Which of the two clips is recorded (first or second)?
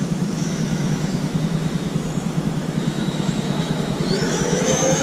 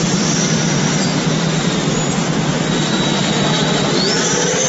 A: second